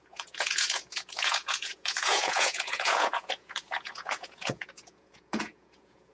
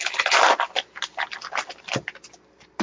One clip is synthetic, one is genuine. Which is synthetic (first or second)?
first